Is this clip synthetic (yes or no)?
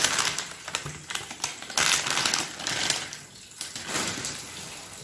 no